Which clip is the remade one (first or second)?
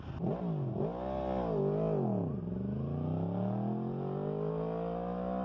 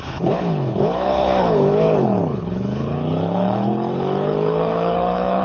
second